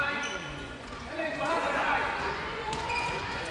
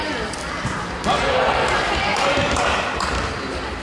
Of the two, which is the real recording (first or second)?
second